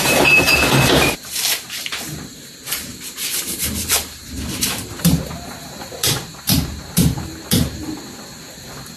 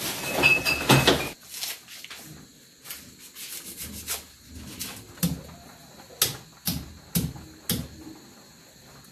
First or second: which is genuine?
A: second